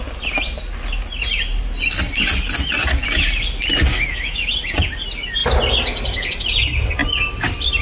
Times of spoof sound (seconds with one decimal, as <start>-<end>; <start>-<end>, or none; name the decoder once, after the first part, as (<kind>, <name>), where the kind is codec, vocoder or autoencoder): 3.9-4.5 (autoencoder, DAC-VAE)

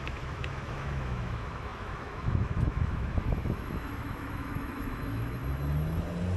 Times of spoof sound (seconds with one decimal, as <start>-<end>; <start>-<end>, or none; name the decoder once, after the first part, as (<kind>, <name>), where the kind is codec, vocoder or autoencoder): 0.0-5.4 (autoencoder, DAC-VAE)

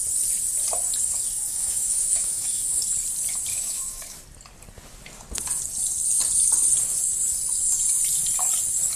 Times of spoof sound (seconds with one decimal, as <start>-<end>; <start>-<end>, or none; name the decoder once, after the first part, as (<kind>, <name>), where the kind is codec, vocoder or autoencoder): 1.5-2.8 (autoencoder, DAC-VAE); 3.5-4.2

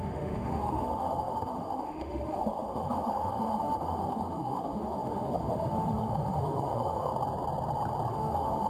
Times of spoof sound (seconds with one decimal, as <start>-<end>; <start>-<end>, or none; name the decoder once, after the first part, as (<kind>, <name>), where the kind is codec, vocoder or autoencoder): 0.0-7.1 (autoencoder, DAC-VAE); 8.1-8.7

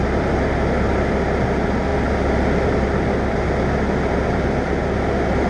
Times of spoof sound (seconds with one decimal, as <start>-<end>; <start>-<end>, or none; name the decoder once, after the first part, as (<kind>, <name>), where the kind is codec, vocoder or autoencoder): none

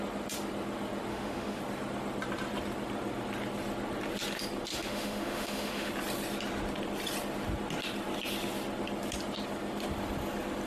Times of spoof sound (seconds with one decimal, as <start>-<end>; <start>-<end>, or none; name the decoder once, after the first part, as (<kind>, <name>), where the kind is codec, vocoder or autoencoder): 1.1-1.6 (autoencoder, DAC-VAE); 4.7-5.9

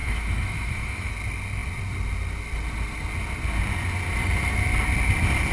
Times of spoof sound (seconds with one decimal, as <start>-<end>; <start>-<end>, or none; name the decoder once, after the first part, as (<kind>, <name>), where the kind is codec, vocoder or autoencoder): 0.0-1.1 (autoencoder, DAC-VAE)

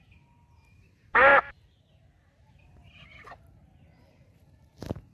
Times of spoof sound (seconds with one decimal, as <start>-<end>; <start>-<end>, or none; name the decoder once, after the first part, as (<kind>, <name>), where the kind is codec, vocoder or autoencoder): none